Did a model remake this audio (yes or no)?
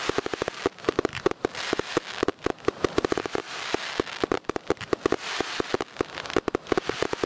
no